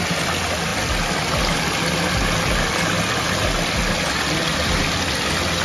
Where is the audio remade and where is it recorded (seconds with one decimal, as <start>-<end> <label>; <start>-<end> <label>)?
0.0-5.6 recorded